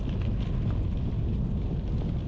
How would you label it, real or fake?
real